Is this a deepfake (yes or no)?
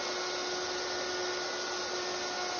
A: no